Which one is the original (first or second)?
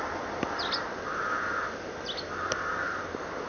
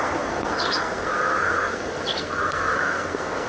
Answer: first